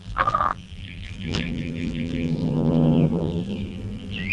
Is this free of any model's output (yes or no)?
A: no